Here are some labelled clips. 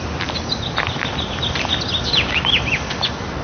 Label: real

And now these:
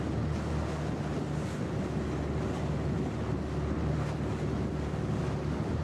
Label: real